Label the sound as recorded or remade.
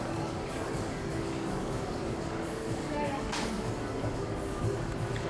remade